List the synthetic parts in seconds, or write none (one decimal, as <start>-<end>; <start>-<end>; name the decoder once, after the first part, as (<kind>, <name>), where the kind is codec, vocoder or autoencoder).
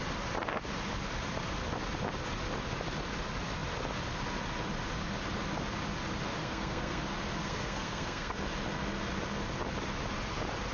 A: 6.4-7.0 (codec, SNAC); 7.4-8.3